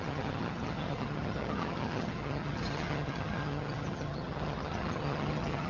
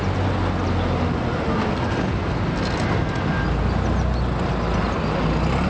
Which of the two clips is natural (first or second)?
second